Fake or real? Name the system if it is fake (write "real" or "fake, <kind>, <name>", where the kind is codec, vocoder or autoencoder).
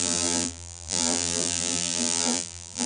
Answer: fake, vocoder, BigVGAN v2